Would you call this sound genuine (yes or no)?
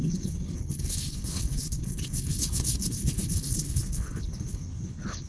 no